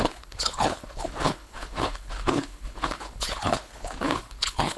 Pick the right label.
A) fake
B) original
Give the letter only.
A